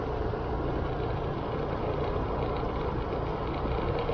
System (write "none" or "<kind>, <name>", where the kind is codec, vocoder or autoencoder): none